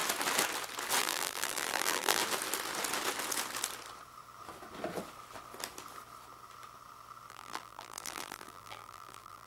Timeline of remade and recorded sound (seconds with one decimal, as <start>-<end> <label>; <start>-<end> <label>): 0.0-1.0 recorded; 1.0-2.2 remade; 2.2-7.3 recorded; 7.3-9.5 remade